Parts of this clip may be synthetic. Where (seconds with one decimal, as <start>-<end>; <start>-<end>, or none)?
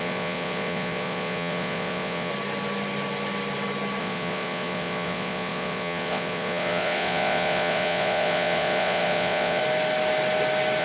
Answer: 0.0-2.3; 4.0-9.6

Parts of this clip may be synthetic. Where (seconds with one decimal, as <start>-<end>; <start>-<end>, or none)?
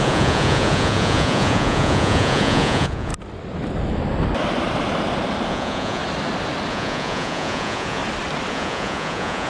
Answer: 0.0-3.1; 5.5-6.0; 6.7-8.0; 8.5-9.5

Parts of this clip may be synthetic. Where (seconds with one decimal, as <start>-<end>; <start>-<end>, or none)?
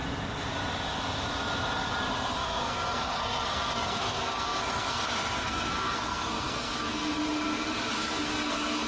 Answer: 2.3-7.0; 7.9-8.9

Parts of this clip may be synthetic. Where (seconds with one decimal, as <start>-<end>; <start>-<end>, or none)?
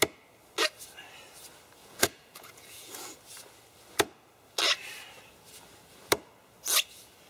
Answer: 1.8-3.2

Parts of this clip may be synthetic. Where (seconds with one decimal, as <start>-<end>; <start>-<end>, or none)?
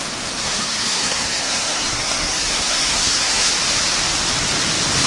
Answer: 0.4-3.5